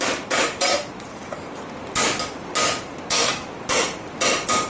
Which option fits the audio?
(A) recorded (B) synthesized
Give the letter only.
A